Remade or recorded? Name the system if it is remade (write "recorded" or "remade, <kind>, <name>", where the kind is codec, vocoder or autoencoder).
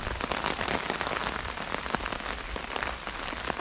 recorded